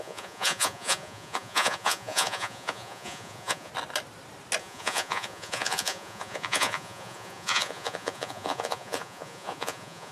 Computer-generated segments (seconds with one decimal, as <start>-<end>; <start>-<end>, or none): 0.0-3.7; 4.6-10.1